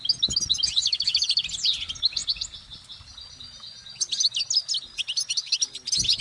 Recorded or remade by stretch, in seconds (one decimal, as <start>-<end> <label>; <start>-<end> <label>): 0.0-6.2 recorded